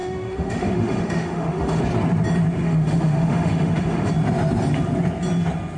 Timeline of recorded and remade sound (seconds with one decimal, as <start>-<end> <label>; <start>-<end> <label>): 0.0-1.8 remade; 1.8-2.6 recorded; 2.6-4.1 remade; 4.1-5.8 recorded